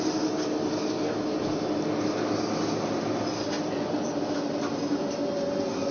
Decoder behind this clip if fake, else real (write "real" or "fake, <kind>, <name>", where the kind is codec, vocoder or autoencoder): real